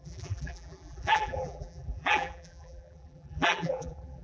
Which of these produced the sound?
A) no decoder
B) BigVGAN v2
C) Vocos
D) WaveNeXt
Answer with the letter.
B